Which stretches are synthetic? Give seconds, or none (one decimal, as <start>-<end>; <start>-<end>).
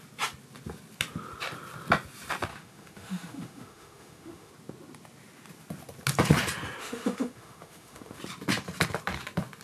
2.5-4.5; 6.8-8.2